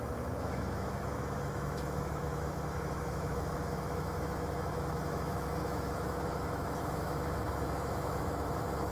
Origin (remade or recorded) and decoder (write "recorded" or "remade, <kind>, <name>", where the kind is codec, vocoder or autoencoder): remade, autoencoder, DAC-VAE